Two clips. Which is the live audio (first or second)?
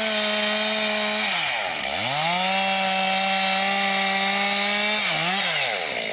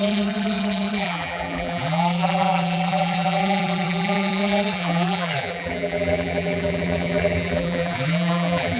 first